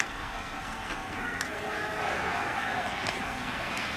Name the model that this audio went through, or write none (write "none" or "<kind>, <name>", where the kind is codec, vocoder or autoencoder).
codec, SNAC